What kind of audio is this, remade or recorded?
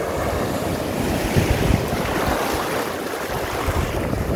recorded